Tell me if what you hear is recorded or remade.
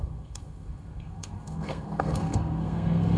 remade